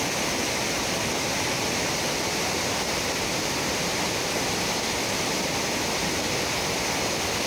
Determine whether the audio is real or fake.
real